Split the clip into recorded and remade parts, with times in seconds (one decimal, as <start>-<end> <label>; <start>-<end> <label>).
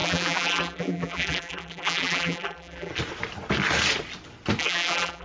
0.0-2.9 remade; 2.9-4.6 recorded; 4.6-5.2 remade